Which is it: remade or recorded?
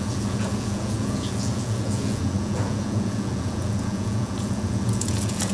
remade